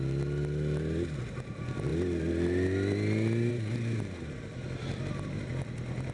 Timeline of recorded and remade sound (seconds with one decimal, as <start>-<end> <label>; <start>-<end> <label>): 0.0-6.1 recorded

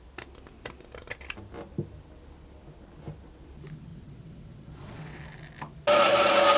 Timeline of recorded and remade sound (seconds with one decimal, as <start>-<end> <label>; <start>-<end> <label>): 0.0-3.9 recorded; 3.9-5.2 remade; 5.2-6.6 recorded